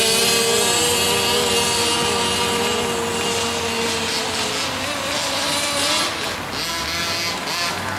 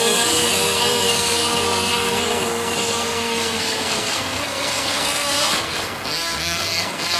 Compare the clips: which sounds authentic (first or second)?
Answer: first